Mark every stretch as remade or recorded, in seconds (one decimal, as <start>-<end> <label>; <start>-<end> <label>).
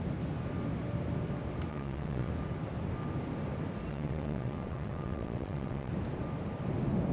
0.0-1.7 recorded; 1.7-2.3 remade; 2.3-3.9 recorded; 3.9-5.9 remade; 5.9-7.1 recorded